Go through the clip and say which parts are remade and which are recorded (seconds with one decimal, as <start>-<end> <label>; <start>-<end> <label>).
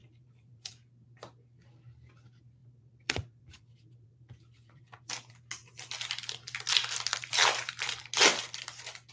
0.0-0.7 remade; 0.7-2.6 recorded; 2.6-4.8 remade; 4.8-9.1 recorded